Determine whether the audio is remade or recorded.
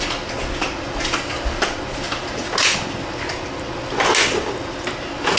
recorded